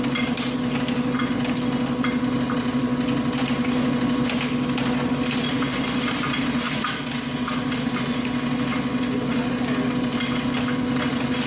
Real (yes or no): yes